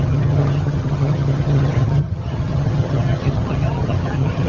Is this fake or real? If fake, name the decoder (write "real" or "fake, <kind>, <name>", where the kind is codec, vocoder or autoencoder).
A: fake, vocoder, HiFi-GAN